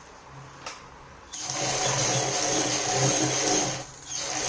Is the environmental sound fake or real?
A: real